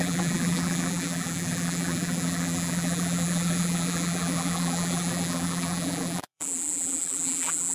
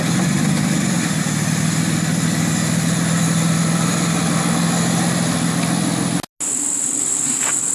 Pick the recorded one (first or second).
second